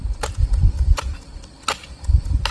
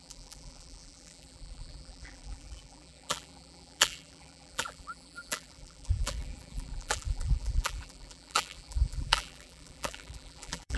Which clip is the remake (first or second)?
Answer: second